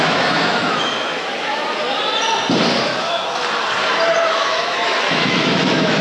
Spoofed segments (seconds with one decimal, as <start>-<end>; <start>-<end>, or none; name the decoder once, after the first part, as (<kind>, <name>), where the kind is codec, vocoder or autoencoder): 0.0-1.6 (autoencoder, DAC-VAE); 2.8-3.2; 4.3-6.0